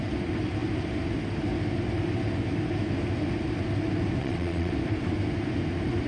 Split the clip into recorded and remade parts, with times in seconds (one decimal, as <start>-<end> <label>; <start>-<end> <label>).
0.0-4.2 recorded; 4.2-4.7 remade; 4.7-6.1 recorded